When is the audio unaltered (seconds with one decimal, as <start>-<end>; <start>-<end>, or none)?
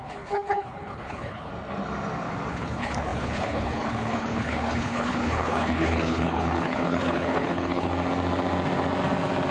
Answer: 1.5-2.5; 7.9-9.5